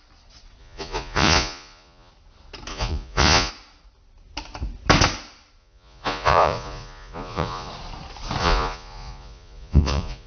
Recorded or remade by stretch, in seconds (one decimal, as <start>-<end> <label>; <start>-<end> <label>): 0.0-0.6 recorded; 0.6-2.1 remade; 2.1-2.7 recorded; 2.7-3.5 remade; 3.5-5.6 recorded; 5.6-7.7 remade; 7.7-8.4 recorded; 8.4-10.3 remade